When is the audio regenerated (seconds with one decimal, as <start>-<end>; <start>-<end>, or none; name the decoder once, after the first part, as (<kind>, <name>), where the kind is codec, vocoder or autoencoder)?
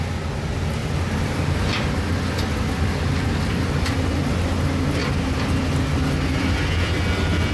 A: none